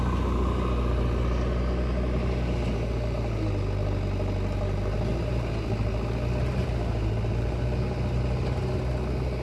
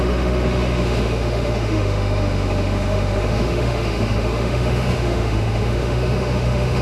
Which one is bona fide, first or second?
first